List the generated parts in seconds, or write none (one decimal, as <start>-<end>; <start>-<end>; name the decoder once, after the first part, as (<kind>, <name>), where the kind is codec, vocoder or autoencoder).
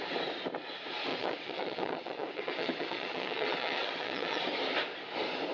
1.1-4.4 (vocoder, WaveNeXt)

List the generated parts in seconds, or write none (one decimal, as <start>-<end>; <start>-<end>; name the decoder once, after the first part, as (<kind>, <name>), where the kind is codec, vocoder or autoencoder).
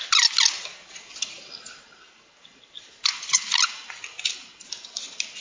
none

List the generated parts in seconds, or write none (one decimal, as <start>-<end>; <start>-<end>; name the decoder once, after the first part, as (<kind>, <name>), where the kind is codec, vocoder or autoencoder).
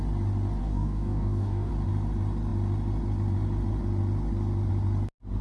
0.6-1.7 (codec, DAC)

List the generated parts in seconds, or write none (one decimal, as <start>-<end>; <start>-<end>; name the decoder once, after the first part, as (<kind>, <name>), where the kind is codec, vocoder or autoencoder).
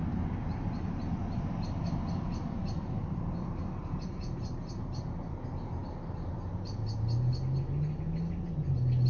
none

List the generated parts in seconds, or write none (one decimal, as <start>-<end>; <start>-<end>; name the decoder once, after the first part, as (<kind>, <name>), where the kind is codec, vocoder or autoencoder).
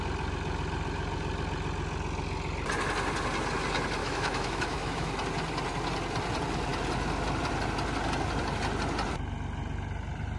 4.0-5.1 (autoencoder, DAC-VAE)